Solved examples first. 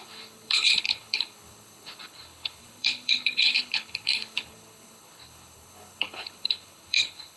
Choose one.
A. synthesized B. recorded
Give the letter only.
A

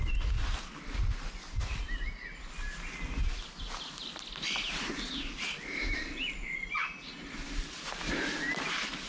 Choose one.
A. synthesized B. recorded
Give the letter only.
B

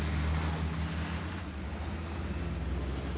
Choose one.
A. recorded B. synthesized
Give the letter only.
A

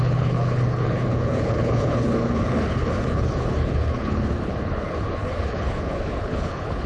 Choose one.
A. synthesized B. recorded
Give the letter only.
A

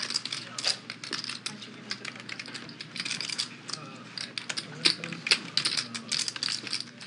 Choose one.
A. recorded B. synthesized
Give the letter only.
A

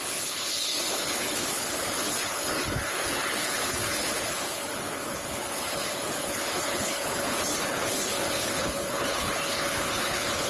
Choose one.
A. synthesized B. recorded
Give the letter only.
A